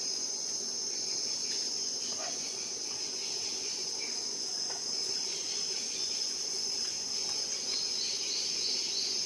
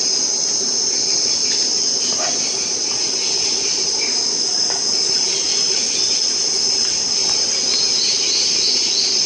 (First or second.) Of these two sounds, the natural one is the second